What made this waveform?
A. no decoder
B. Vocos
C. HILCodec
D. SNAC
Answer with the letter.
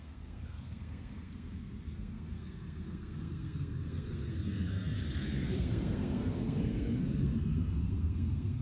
D